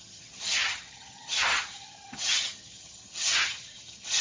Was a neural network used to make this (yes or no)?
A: yes